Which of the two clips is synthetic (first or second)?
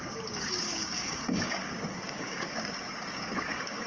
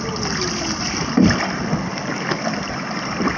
first